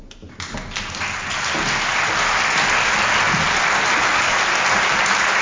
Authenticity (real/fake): real